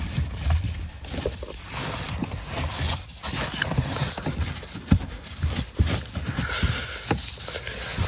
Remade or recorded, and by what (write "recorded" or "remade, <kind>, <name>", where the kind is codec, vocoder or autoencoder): remade, vocoder, BigVGAN v2